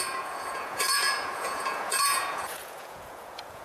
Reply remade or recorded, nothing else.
remade